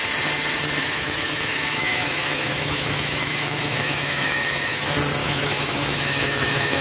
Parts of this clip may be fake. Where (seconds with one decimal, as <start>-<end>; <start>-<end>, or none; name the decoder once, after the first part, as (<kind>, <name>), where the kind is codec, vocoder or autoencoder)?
0.8-4.8 (autoencoder, DAC-VAE); 5.2-6.8